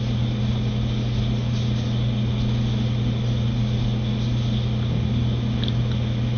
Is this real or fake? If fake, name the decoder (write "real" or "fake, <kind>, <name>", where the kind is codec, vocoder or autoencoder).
real